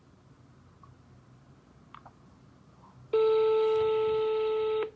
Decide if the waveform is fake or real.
real